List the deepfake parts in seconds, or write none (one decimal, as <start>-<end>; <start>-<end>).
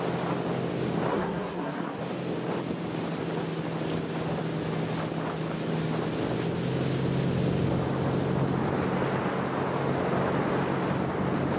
1.1-2.0